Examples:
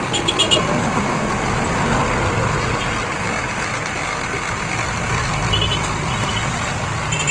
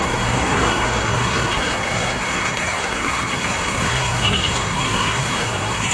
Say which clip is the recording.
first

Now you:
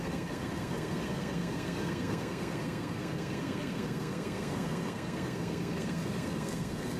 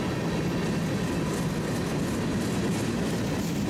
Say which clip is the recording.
second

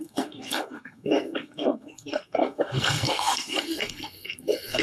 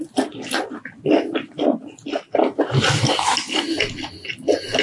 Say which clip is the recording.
second